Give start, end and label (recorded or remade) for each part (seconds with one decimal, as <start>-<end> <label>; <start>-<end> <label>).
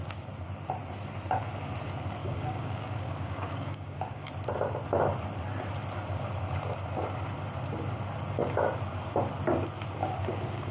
0.0-2.2 recorded; 2.2-4.3 remade; 4.3-10.0 recorded; 10.0-10.7 remade